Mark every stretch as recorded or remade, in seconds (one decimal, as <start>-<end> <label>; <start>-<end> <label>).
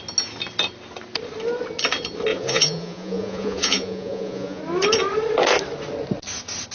0.0-2.3 recorded; 2.3-4.6 remade; 4.6-6.7 recorded